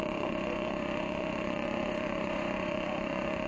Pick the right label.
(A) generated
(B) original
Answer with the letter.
A